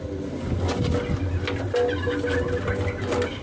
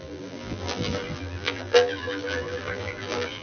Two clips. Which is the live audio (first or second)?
first